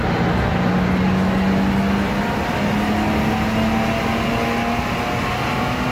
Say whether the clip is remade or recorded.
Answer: recorded